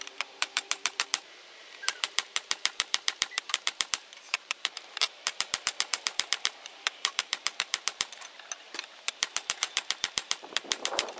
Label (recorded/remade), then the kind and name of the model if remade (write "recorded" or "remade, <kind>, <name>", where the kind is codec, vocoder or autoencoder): remade, vocoder, BigVGAN v2